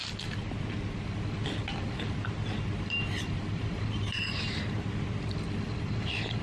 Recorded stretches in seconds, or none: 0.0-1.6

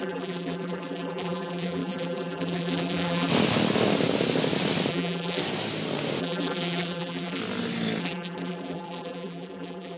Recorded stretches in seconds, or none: 3.3-4.9; 5.4-6.2; 7.4-8.0

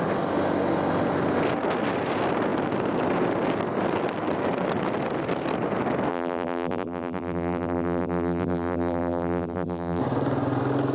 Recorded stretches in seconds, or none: 0.0-6.1; 10.0-10.9